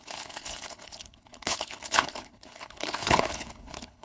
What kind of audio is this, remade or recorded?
remade